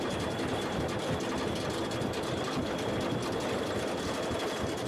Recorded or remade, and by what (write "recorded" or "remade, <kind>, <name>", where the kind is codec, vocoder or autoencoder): recorded